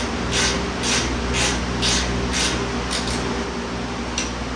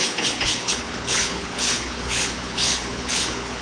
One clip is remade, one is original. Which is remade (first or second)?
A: second